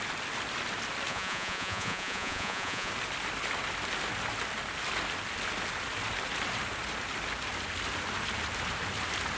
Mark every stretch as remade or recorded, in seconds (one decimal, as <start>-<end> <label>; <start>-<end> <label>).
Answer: 0.0-1.1 recorded; 1.1-2.9 remade; 2.9-9.4 recorded